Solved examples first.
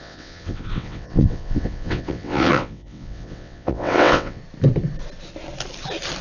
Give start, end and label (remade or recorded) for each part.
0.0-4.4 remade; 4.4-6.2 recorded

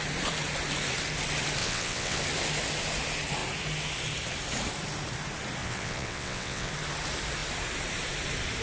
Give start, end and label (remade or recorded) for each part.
0.0-1.6 recorded; 1.6-2.2 remade; 2.2-5.6 recorded; 5.6-6.7 remade; 6.7-8.6 recorded

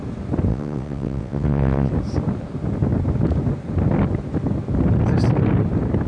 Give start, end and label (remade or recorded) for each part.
0.0-0.5 recorded; 0.5-1.9 remade; 1.9-6.1 recorded

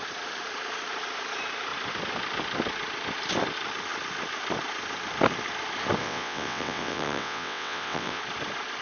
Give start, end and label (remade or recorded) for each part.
0.0-6.0 recorded; 6.0-8.2 remade; 8.2-8.8 recorded

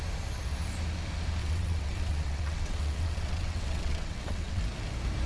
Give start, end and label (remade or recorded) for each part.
0.0-1.4 recorded; 1.4-4.6 remade; 4.6-5.3 recorded

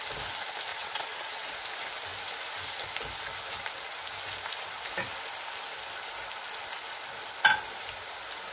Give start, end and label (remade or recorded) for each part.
0.0-0.7 recorded; 0.7-1.5 remade; 1.5-8.5 recorded

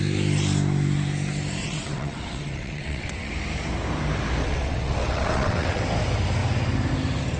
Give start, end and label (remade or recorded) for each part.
0.0-1.6 recorded; 1.6-3.3 remade; 3.3-4.4 recorded; 4.4-5.8 remade; 5.8-7.4 recorded

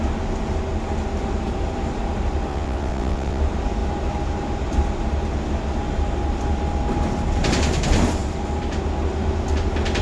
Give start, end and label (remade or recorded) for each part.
0.0-2.5 recorded; 2.5-3.4 remade; 3.4-10.0 recorded